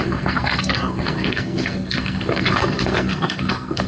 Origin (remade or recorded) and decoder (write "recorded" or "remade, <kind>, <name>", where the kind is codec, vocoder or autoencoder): remade, codec, SNAC